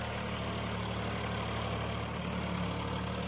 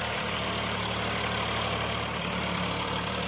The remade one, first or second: second